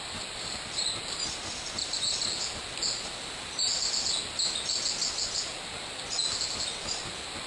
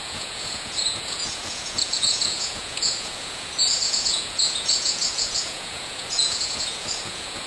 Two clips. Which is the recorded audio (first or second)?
first